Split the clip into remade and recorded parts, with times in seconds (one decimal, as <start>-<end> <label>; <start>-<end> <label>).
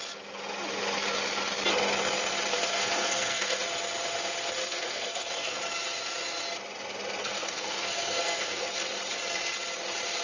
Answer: 0.0-2.5 recorded; 2.5-3.6 remade; 3.6-4.6 recorded; 4.6-5.6 remade; 5.6-7.2 recorded; 7.2-8.7 remade; 8.7-10.2 recorded